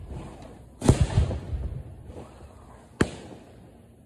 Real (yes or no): yes